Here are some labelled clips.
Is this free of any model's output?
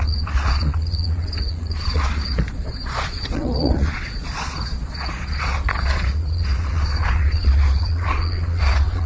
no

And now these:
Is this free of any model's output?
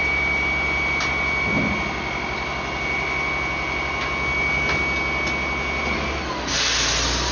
yes